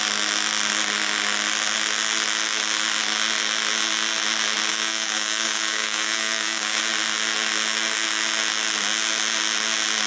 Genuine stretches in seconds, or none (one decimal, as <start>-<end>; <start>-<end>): 0.0-4.7; 6.8-10.1